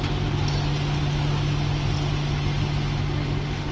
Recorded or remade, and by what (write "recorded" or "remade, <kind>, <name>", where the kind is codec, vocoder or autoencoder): recorded